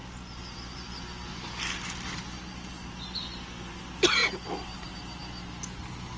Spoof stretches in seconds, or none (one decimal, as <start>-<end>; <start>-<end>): none